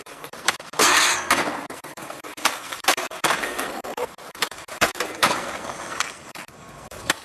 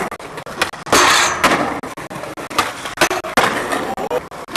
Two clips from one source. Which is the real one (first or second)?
second